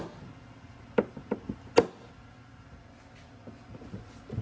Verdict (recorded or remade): recorded